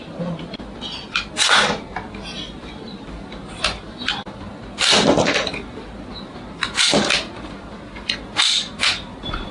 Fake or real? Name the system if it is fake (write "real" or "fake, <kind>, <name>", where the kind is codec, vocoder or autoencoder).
real